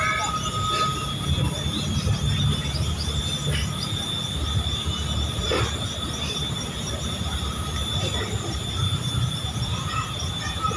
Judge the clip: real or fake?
real